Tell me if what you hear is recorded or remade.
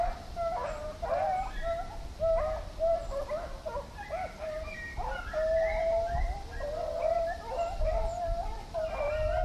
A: recorded